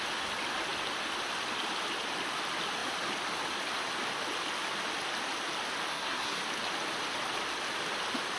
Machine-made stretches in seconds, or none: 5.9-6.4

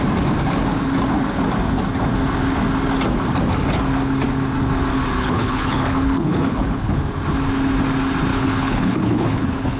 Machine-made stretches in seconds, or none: 5.2-7.0; 8.3-9.8

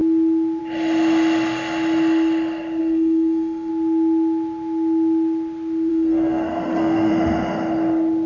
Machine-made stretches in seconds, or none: 2.8-3.7; 5.9-7.1